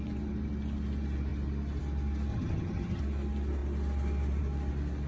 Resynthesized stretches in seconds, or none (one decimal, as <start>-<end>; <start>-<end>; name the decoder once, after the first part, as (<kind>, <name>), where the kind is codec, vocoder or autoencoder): 2.3-3.0 (vocoder, HiFi-GAN)